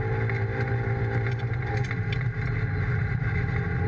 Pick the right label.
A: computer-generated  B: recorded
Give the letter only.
B